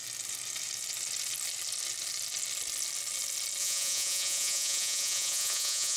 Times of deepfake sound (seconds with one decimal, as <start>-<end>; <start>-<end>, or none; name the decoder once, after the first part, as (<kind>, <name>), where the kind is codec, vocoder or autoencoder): 3.6-6.0 (vocoder, Vocos)